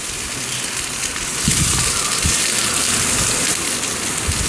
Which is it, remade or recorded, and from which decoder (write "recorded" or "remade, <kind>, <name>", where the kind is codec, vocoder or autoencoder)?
recorded